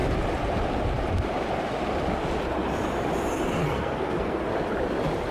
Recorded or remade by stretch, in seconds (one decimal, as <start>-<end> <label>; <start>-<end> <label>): 0.0-3.6 recorded; 3.6-4.4 remade; 4.4-5.3 recorded